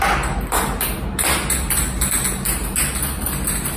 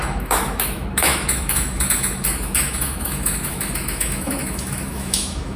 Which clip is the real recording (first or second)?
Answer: first